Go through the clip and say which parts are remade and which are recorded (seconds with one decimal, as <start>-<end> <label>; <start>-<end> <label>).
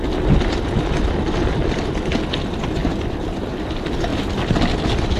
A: 0.0-2.8 recorded; 2.8-3.5 remade; 3.5-4.1 recorded; 4.1-4.8 remade; 4.8-5.2 recorded